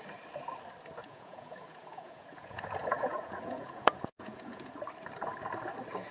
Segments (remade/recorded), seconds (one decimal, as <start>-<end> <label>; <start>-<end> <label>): 0.0-1.0 recorded; 1.0-4.7 remade; 4.7-6.1 recorded